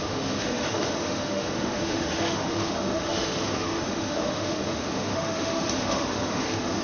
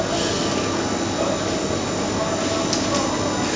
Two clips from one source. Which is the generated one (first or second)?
first